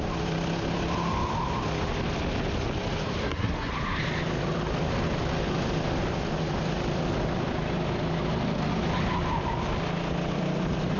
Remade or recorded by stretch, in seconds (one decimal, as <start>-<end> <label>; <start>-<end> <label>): 0.0-3.2 recorded; 3.2-3.7 remade; 3.7-11.0 recorded